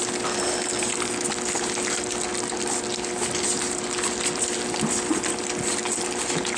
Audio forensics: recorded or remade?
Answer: recorded